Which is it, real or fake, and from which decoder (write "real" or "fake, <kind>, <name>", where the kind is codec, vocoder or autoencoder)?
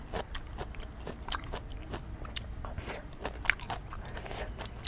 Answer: fake, vocoder, BigVGAN v2